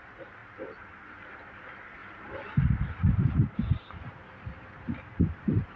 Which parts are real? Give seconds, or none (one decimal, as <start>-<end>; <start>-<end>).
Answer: 0.0-0.4; 1.3-2.0; 2.6-3.2; 4.1-5.8

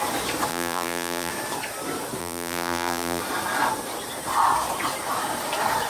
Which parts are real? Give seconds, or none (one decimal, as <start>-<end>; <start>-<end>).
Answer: 0.0-0.5; 1.3-2.2; 3.2-5.9

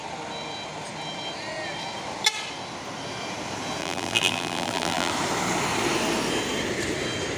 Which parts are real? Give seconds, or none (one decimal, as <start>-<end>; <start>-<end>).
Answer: 0.0-3.8; 5.1-7.4

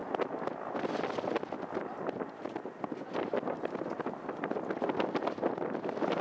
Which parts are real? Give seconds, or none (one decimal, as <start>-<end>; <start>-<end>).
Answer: 0.0-6.2

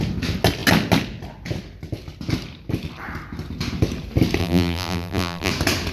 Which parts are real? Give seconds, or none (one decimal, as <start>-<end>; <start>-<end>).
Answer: 0.0-4.4; 5.5-5.9